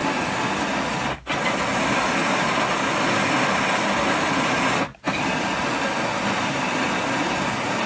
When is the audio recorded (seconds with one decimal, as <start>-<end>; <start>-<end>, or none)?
0.0-7.9